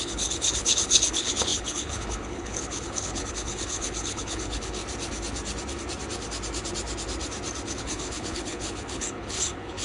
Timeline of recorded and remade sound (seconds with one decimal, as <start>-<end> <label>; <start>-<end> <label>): 0.0-4.8 remade; 4.8-7.8 recorded; 7.8-9.8 remade

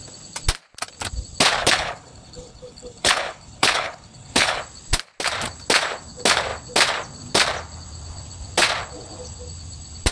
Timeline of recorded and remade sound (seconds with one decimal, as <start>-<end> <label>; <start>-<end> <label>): 0.0-1.6 recorded; 1.6-4.6 remade; 4.6-10.1 recorded

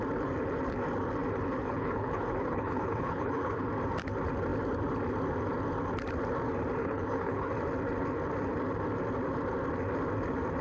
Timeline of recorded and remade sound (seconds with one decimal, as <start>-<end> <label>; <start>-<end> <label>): 0.0-1.6 recorded; 1.6-3.7 remade; 3.7-6.8 recorded; 6.8-7.5 remade; 7.5-10.6 recorded

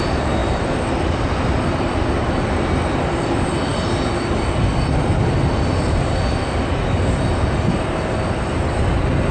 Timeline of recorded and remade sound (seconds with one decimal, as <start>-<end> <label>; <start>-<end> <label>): 0.0-9.3 recorded

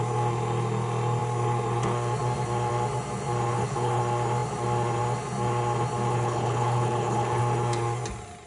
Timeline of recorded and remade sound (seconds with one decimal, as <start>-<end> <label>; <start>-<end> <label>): 0.0-3.5 recorded; 3.5-4.0 remade; 4.0-6.1 recorded; 6.1-7.4 remade; 7.4-8.5 recorded

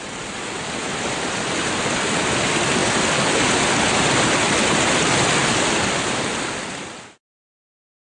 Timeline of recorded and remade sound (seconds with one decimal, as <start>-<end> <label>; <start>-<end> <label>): 0.0-8.1 recorded